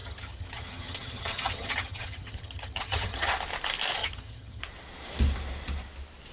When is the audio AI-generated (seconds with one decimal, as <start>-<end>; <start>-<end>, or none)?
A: 0.0-3.3; 4.0-4.6